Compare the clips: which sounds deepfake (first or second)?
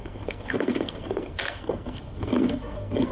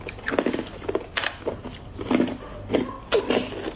first